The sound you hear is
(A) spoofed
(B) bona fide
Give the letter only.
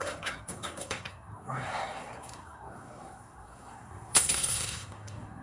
A